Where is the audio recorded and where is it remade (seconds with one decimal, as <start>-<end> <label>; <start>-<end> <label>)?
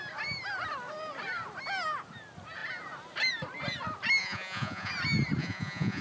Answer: 0.0-4.2 recorded; 4.2-4.9 remade; 4.9-5.4 recorded; 5.4-6.0 remade